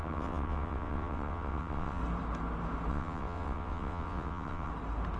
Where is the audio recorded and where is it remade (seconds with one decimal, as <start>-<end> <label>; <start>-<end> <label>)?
0.0-2.0 remade; 2.0-2.9 recorded; 2.9-4.7 remade; 4.7-5.2 recorded

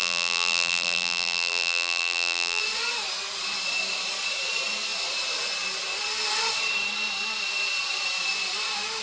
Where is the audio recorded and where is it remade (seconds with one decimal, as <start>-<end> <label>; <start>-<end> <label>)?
0.0-2.6 remade; 2.6-9.0 recorded

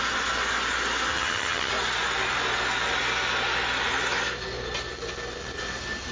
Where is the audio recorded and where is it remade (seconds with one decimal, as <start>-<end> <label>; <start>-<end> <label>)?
0.0-1.1 recorded; 1.1-1.7 remade; 1.7-6.1 recorded

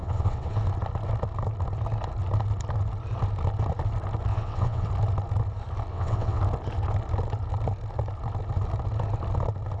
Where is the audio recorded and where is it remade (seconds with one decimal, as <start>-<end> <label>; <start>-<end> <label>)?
0.0-0.6 remade; 0.6-4.3 recorded; 4.3-4.9 remade; 4.9-5.9 recorded; 5.9-6.4 remade; 6.4-9.8 recorded

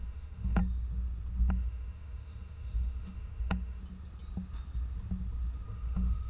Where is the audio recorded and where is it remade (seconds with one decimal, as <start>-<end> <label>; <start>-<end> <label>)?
0.0-0.6 remade; 0.6-1.5 recorded; 1.5-3.8 remade; 3.8-5.7 recorded; 5.7-6.3 remade

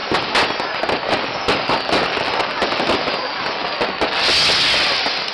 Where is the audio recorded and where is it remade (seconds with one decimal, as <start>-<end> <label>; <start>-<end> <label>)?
0.0-5.3 recorded

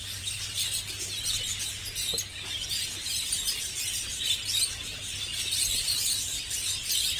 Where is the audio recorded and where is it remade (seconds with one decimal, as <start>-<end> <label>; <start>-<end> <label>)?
0.0-0.6 remade; 0.6-3.5 recorded; 3.5-4.1 remade; 4.1-5.3 recorded; 5.3-6.0 remade; 6.0-7.2 recorded

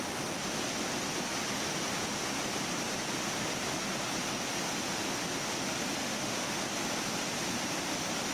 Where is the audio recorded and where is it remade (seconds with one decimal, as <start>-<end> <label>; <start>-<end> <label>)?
0.0-6.0 recorded; 6.0-6.6 remade; 6.6-8.3 recorded